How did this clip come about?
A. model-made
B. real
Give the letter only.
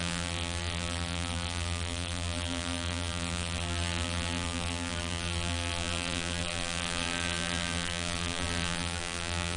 A